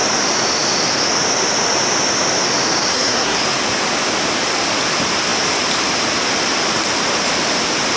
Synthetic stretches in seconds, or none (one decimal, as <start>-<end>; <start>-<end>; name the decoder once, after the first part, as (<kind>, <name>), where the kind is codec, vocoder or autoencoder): 2.9-3.4 (codec, SNAC)